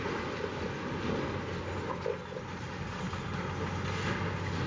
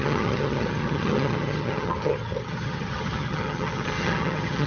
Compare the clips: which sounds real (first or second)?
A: first